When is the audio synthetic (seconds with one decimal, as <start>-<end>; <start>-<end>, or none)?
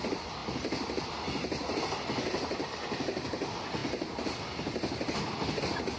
0.4-1.0